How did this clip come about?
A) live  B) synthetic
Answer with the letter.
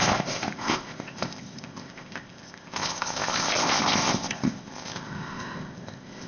B